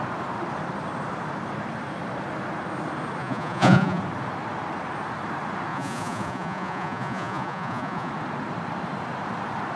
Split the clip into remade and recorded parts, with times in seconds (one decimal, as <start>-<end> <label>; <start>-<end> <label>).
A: 0.0-3.2 recorded; 3.2-4.0 remade; 4.0-5.7 recorded; 5.7-8.1 remade; 8.1-9.8 recorded